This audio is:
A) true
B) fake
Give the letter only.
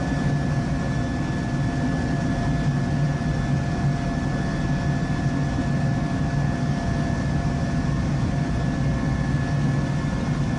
A